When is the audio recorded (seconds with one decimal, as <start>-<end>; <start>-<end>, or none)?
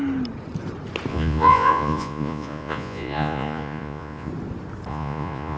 0.0-1.1; 4.3-4.9